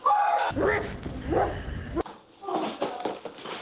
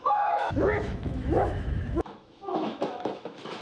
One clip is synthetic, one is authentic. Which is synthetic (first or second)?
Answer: second